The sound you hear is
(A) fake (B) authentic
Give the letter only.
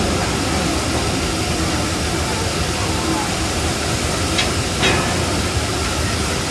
B